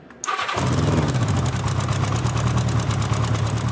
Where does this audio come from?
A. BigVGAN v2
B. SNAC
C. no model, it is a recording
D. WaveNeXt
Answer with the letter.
C